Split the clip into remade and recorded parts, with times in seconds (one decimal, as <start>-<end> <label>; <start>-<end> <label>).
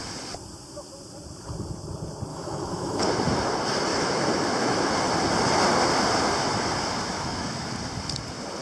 0.0-2.3 recorded; 2.3-3.0 remade; 3.0-3.9 recorded; 3.9-4.9 remade; 4.9-7.1 recorded; 7.1-7.7 remade; 7.7-8.6 recorded